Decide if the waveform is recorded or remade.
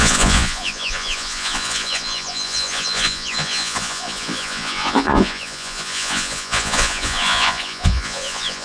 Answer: remade